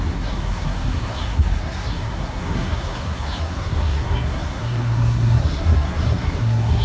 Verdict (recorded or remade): remade